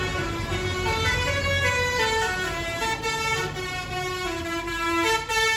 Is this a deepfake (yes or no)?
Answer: yes